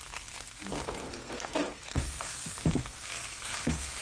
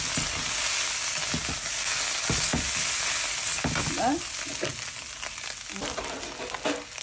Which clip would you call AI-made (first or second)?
first